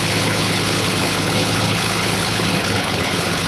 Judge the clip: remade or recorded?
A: remade